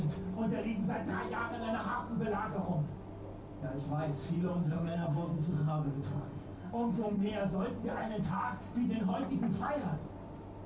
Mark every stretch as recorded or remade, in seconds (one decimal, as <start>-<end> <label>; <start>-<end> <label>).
0.0-4.6 recorded; 4.6-7.3 remade; 7.3-8.0 recorded; 8.0-8.6 remade; 8.6-10.7 recorded